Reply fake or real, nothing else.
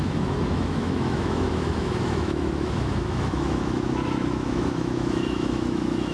fake